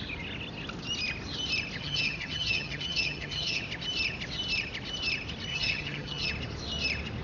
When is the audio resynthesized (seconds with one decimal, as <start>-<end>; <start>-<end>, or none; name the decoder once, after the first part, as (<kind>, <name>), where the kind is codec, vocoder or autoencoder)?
1.8-3.6 (vocoder, HiFi-GAN); 5.5-6.3